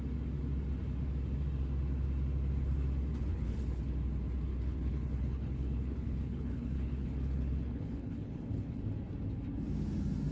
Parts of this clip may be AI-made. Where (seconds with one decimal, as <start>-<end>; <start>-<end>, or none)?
3.3-3.8; 4.5-8.8